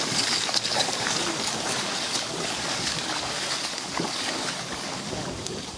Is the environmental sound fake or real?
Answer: fake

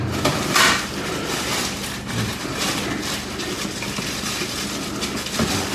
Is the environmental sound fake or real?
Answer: real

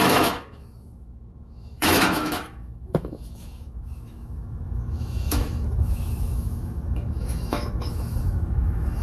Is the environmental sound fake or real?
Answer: fake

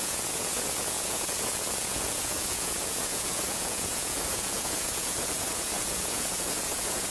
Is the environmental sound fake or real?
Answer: fake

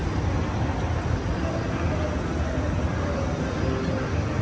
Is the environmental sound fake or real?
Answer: real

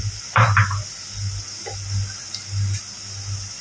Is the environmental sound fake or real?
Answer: real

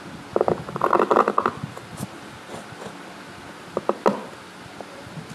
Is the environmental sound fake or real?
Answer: real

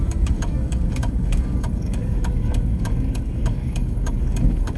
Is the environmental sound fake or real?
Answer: fake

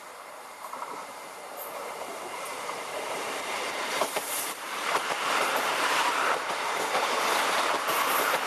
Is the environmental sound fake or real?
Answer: fake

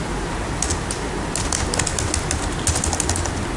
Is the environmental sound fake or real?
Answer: real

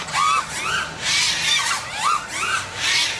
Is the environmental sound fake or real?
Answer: real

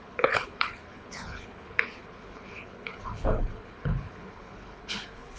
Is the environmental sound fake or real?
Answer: fake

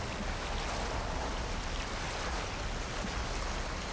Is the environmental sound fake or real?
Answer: real